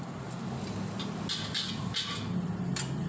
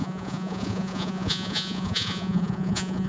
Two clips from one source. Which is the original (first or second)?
first